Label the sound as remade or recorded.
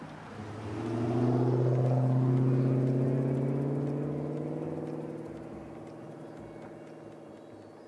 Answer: recorded